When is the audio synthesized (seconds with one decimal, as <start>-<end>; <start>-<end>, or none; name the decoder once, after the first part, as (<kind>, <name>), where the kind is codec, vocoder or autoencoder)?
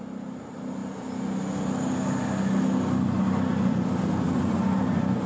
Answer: none